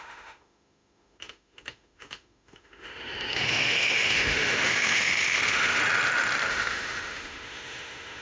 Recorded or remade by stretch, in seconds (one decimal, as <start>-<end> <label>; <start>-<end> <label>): 0.0-5.8 remade; 5.8-6.5 recorded; 6.5-8.2 remade